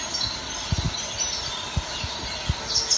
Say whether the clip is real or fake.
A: real